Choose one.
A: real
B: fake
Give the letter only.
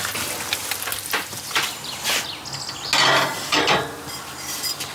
A